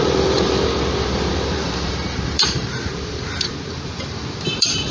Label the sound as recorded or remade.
remade